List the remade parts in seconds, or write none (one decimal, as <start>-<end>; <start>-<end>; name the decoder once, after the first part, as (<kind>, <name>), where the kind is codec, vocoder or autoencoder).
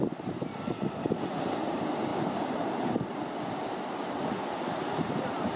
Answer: 2.1-5.6 (vocoder, BigVGAN v2)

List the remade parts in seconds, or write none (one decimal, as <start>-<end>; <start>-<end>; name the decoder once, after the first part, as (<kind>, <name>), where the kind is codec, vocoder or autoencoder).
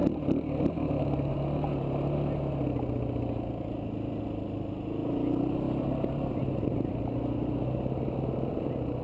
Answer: 5.0-6.9 (vocoder, BigVGAN v2)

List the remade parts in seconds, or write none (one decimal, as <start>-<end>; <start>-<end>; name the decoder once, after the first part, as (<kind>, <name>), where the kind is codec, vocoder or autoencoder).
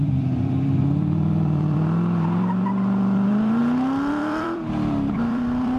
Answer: 0.0-3.6 (vocoder, BigVGAN v2); 4.1-5.8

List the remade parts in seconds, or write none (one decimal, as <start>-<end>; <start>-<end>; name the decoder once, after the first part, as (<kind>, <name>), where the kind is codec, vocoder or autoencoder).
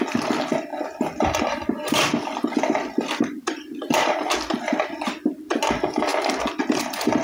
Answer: 0.7-4.6 (vocoder, BigVGAN v2)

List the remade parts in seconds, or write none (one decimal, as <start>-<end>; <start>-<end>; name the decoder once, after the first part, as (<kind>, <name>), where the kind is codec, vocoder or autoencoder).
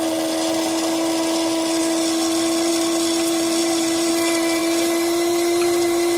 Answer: 3.6-4.1 (vocoder, BigVGAN v2)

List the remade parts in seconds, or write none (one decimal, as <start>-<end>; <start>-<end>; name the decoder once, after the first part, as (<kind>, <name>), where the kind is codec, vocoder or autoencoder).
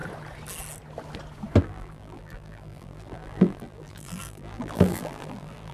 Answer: 1.6-5.7 (vocoder, BigVGAN v2)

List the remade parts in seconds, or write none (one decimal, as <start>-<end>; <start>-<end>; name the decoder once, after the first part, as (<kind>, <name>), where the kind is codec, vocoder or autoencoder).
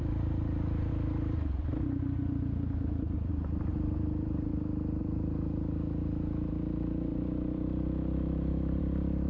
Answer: 0.0-0.9 (vocoder, BigVGAN v2); 3.3-4.5; 5.0-9.3